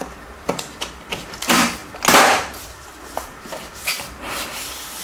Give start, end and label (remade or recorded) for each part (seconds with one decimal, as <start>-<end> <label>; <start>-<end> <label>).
0.0-1.8 remade; 1.8-2.6 recorded; 2.6-5.0 remade